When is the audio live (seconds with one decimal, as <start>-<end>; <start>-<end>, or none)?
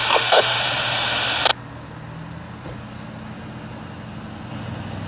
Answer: 0.6-5.1